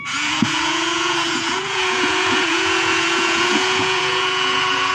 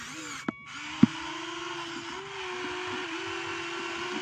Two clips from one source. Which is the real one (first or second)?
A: second